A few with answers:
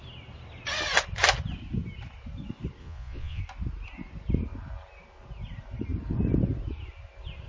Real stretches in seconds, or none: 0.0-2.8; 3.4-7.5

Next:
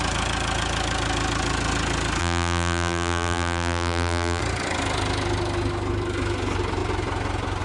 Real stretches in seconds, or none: 0.0-2.2; 4.4-7.6

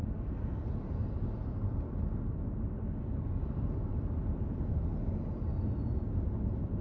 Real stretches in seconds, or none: 0.0-3.9; 5.5-6.8

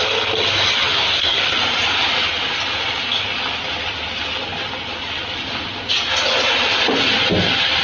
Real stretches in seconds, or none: 0.0-0.9; 1.4-7.8

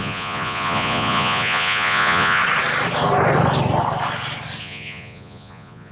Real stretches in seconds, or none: 2.4-4.6

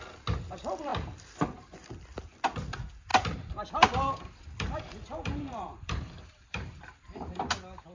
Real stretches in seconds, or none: 0.0-3.1; 7.4-7.9

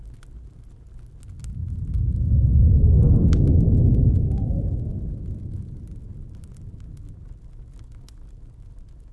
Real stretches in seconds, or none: 0.0-9.1